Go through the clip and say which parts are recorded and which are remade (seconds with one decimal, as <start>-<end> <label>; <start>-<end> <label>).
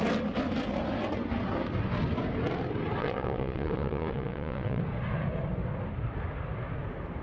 0.0-3.0 recorded; 3.0-4.8 remade; 4.8-7.2 recorded